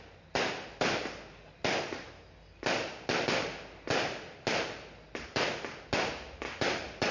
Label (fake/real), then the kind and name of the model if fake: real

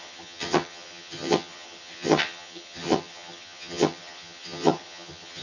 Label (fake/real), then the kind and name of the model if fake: fake, vocoder, HiFi-GAN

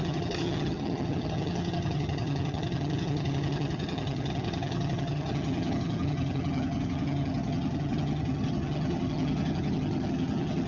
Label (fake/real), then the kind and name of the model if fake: fake, vocoder, HiFi-GAN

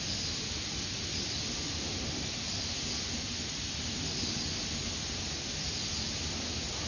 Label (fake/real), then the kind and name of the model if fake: real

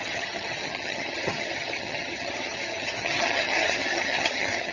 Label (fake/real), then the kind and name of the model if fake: fake, vocoder, HiFi-GAN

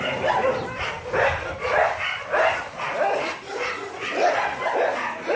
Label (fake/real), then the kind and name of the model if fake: real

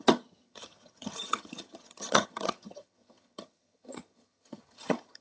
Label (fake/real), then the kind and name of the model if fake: fake, vocoder, HiFi-GAN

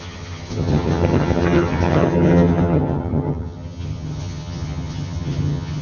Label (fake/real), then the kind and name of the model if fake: fake, vocoder, HiFi-GAN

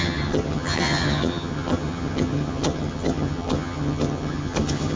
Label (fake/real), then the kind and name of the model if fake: fake, vocoder, HiFi-GAN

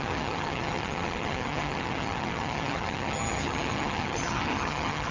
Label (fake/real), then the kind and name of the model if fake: fake, vocoder, HiFi-GAN